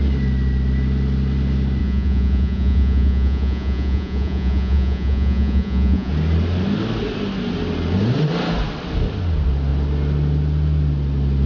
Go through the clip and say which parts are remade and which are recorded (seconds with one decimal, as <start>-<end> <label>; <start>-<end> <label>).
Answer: 0.0-1.8 recorded; 1.8-6.1 remade; 6.1-11.5 recorded